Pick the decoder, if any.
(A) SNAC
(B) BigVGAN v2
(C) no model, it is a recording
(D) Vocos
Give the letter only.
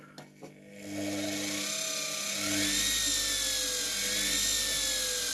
C